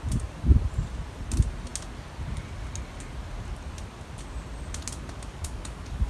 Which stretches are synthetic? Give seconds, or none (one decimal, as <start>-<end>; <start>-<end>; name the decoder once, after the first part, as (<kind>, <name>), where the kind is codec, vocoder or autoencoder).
5.3-6.1 (codec, DAC)

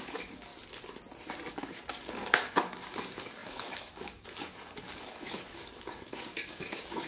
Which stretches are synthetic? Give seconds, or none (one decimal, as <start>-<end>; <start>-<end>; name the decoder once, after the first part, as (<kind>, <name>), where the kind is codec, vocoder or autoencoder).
0.0-0.5 (codec, DAC); 1.5-7.1

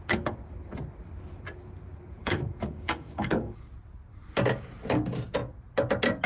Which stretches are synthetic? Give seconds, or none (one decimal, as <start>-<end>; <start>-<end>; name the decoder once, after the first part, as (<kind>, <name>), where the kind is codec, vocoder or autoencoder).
2.2-3.7 (codec, DAC)

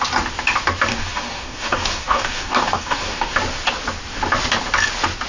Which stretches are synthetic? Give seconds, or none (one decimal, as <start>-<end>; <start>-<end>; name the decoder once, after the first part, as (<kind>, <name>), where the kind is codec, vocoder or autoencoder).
0.9-3.3 (codec, DAC)

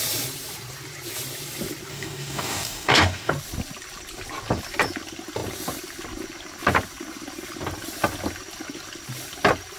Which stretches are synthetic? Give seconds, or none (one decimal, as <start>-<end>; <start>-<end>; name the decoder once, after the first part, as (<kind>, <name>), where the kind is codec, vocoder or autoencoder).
1.9-3.3 (codec, DAC)

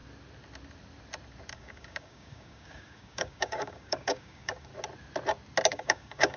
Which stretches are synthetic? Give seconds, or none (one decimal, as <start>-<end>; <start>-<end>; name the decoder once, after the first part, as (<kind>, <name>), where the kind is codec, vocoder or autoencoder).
1.5-4.7 (codec, DAC); 5.7-6.4

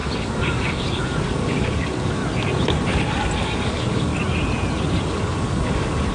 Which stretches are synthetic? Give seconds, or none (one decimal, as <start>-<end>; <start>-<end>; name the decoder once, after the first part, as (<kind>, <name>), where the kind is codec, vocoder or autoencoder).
0.0-2.2 (codec, DAC); 3.4-4.1; 5.0-6.1